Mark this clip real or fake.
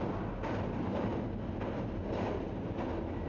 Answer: real